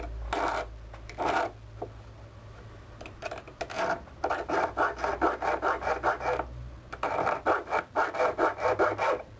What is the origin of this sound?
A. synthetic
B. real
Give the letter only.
B